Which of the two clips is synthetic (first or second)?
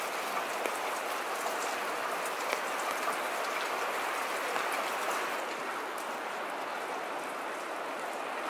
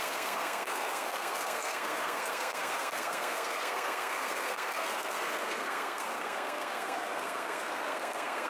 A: second